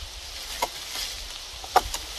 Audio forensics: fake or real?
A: real